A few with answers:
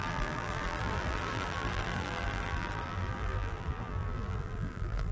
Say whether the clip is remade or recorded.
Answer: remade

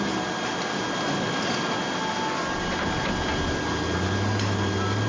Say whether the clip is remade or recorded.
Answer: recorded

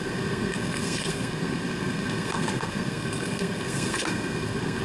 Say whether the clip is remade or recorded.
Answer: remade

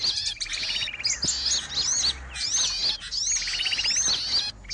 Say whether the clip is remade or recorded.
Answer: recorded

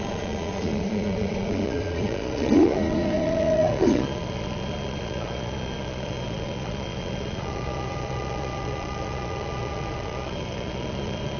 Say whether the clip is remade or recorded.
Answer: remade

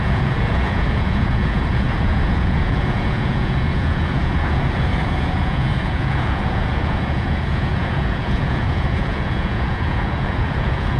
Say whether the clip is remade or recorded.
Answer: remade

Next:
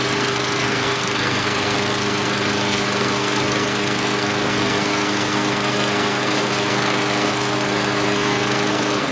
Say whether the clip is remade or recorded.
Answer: remade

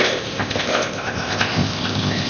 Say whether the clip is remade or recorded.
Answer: remade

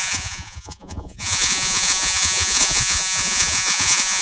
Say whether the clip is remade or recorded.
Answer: remade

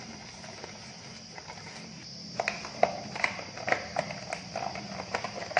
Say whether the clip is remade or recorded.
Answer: recorded